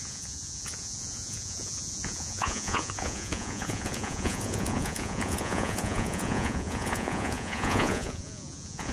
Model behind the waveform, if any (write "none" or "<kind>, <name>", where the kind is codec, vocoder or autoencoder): vocoder, Vocos